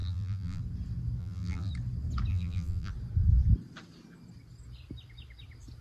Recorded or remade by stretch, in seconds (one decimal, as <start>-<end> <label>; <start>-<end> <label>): 0.0-0.6 remade; 0.6-1.2 recorded; 1.2-1.7 remade; 1.7-2.3 recorded; 2.3-2.9 remade; 2.9-5.8 recorded

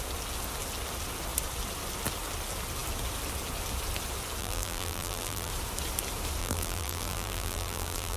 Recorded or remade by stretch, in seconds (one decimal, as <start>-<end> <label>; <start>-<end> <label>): 0.0-4.4 recorded; 4.4-5.5 remade; 5.5-6.4 recorded; 6.4-8.2 remade

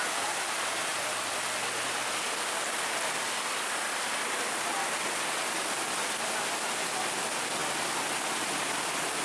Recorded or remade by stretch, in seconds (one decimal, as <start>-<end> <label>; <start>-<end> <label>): 0.0-7.6 recorded; 7.6-9.2 remade

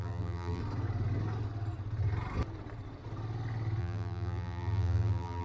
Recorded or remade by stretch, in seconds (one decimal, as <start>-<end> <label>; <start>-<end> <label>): 0.0-0.6 remade; 0.6-3.8 recorded; 3.8-5.4 remade

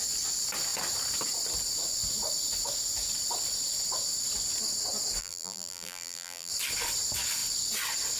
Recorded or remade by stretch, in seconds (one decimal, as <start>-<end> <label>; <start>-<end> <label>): 0.0-5.2 recorded; 5.2-6.5 remade; 6.5-8.2 recorded

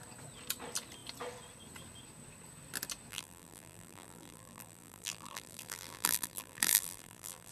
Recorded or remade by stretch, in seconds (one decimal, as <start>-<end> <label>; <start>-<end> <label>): 0.0-3.1 recorded; 3.1-7.5 remade